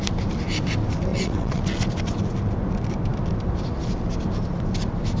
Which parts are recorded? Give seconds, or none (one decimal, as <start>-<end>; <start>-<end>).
0.0-1.1; 1.6-5.2